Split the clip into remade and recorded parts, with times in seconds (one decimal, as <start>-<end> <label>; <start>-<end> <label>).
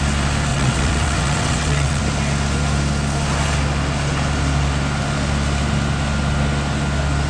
0.0-0.5 recorded; 0.5-2.0 remade; 2.0-7.3 recorded